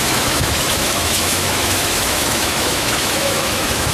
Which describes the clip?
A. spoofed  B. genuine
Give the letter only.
A